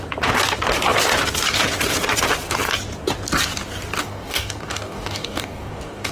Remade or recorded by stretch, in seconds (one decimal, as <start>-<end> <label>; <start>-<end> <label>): 0.0-4.0 recorded; 4.0-6.1 remade

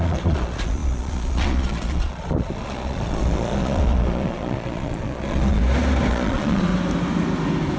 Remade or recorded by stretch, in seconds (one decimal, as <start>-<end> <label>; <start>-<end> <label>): 0.0-5.6 remade; 5.6-6.1 recorded; 6.1-6.7 remade; 6.7-7.8 recorded

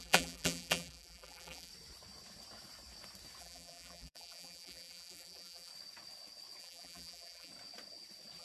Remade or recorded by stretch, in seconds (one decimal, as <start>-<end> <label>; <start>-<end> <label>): 0.0-1.7 remade; 1.7-3.4 recorded; 3.4-5.7 remade; 5.7-6.6 recorded; 6.6-7.5 remade; 7.5-8.4 recorded

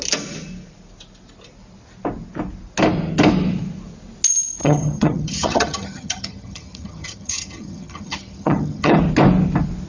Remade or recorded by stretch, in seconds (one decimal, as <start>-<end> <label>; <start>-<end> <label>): 0.0-4.6 recorded; 4.6-9.0 remade; 9.0-9.9 recorded

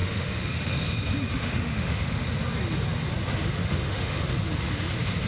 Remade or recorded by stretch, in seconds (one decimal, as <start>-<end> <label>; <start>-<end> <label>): 0.0-0.8 remade; 0.8-1.3 recorded; 1.3-2.3 remade; 2.3-3.6 recorded; 3.6-4.2 remade; 4.2-5.3 recorded

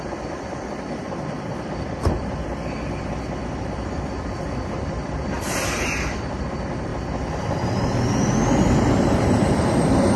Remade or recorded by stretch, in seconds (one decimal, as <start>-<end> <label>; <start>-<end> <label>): 0.0-6.9 remade; 6.9-9.0 recorded; 9.0-10.2 remade

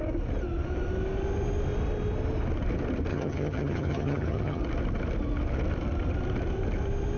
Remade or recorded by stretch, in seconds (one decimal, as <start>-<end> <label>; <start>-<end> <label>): 0.0-3.1 recorded; 3.1-4.6 remade; 4.6-7.2 recorded

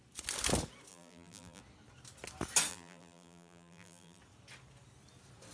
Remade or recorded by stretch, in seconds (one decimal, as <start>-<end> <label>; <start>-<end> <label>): 0.0-0.9 recorded; 0.9-1.6 remade; 1.6-2.7 recorded; 2.7-4.2 remade; 4.2-5.5 recorded